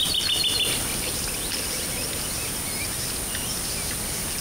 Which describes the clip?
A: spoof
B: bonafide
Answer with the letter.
B